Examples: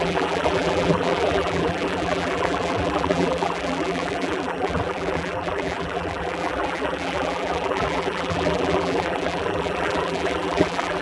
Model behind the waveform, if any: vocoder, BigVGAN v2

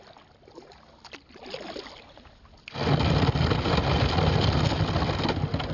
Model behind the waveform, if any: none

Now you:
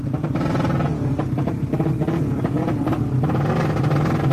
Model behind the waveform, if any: none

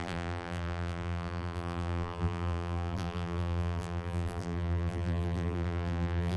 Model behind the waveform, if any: vocoder, BigVGAN v2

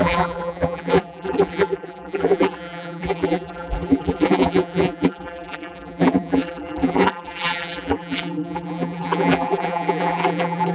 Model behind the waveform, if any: vocoder, BigVGAN v2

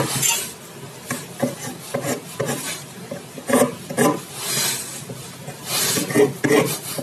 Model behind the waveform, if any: none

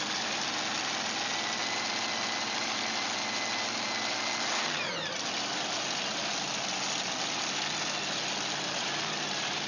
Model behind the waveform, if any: none